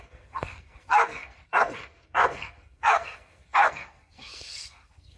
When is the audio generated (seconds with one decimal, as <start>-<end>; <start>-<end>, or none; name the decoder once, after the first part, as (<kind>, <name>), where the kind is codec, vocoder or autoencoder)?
0.0-5.2 (codec, SNAC)